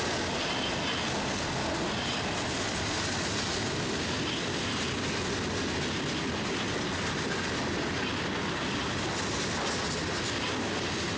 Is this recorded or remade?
recorded